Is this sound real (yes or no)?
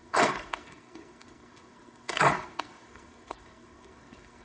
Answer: no